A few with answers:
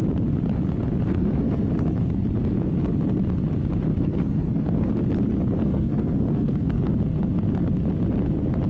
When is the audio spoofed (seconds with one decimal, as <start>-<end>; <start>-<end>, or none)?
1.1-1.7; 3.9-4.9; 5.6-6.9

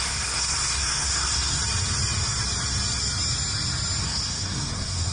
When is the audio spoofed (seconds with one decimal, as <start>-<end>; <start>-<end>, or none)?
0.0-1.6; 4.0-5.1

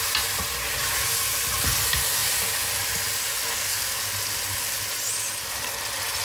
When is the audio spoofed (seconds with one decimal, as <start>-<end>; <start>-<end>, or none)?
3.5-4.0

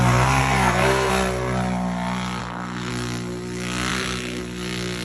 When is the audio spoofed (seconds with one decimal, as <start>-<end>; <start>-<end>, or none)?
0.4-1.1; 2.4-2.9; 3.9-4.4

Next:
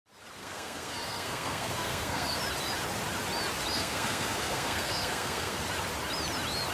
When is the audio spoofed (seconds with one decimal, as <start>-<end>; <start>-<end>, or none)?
0.4-2.4; 3.7-5.6

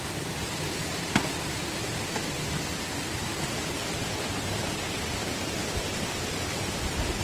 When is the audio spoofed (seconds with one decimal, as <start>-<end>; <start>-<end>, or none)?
none